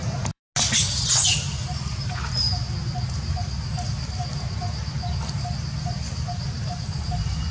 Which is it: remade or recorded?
recorded